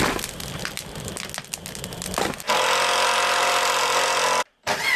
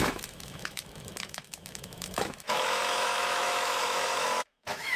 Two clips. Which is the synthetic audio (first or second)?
second